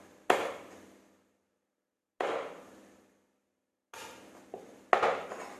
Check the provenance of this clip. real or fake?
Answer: real